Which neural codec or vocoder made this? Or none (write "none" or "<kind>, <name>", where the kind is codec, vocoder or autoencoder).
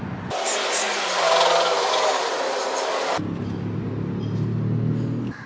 none